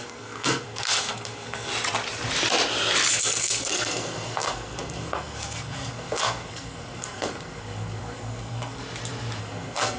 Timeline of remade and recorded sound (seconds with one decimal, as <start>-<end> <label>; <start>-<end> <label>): 0.0-1.7 remade; 1.7-3.1 recorded; 3.1-8.8 remade; 8.8-9.4 recorded; 9.4-10.0 remade